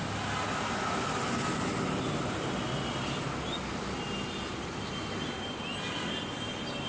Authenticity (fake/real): real